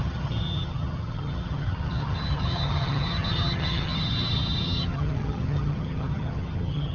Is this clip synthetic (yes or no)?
yes